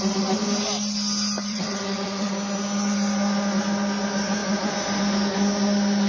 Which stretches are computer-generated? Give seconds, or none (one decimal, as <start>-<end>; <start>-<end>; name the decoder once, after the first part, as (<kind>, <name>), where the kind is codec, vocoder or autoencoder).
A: 1.4-2.3 (vocoder, WaveNeXt)